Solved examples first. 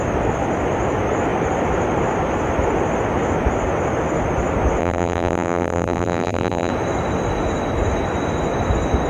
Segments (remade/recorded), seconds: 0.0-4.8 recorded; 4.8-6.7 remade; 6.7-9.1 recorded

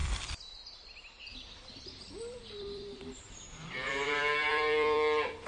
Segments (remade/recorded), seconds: 0.0-5.5 remade

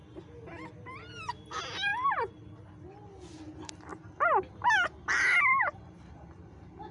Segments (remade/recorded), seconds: 0.0-0.8 recorded; 0.8-1.9 remade; 1.9-3.3 recorded; 3.3-3.9 remade; 3.9-5.7 recorded; 5.7-6.9 remade